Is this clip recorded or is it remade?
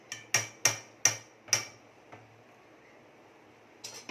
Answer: recorded